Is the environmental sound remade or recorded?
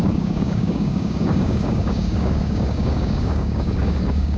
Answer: remade